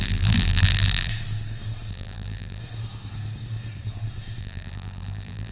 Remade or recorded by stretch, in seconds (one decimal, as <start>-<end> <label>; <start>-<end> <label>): 0.0-1.1 remade; 1.1-1.9 recorded; 1.9-2.6 remade; 2.6-4.4 recorded; 4.4-5.5 remade